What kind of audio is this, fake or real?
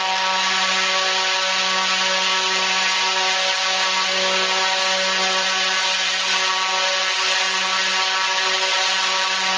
real